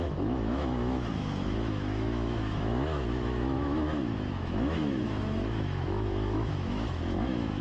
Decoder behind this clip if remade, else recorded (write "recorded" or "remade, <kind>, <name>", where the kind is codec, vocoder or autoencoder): remade, autoencoder, DAC-VAE